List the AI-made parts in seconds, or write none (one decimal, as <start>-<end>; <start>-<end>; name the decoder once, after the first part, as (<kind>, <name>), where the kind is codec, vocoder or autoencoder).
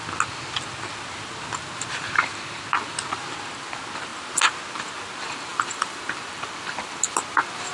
5.5-7.7 (vocoder, BigVGAN v2)